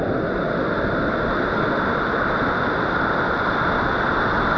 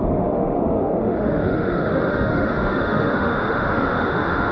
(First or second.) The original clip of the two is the first